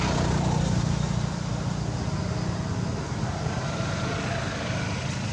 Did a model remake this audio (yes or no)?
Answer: no